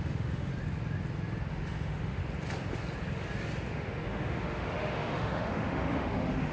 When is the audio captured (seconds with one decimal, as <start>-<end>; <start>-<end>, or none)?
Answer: 0.5-1.5; 2.2-3.7